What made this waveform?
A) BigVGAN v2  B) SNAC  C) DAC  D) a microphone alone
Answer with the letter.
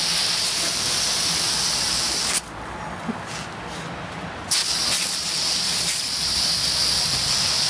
D